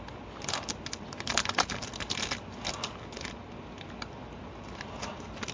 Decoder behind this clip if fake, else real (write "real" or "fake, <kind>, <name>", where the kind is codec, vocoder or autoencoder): real